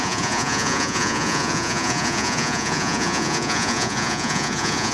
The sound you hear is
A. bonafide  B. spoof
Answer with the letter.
B